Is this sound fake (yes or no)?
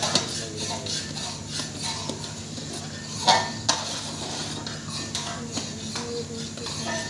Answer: no